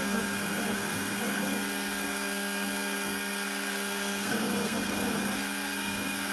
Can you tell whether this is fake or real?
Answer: fake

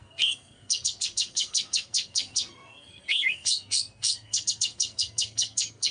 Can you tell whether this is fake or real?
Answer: fake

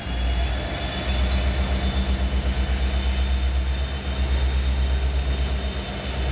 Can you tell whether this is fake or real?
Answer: real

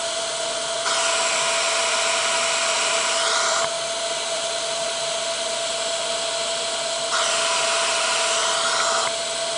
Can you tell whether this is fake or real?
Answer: real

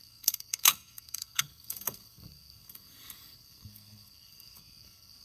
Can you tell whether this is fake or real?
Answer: fake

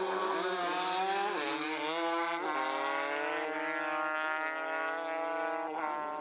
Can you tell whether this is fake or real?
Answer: real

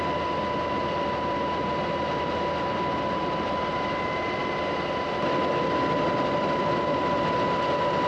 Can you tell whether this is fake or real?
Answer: real